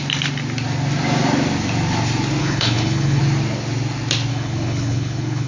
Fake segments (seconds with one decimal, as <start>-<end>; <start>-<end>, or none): 2.4-3.2; 4.3-5.5